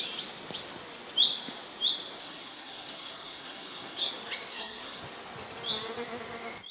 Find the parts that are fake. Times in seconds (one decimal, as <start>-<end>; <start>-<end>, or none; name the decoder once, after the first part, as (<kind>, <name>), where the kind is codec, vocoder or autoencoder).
2.2-4.1 (codec, SNAC); 4.5-5.0